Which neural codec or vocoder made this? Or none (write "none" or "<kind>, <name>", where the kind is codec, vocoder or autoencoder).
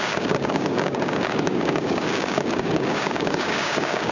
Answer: codec, DAC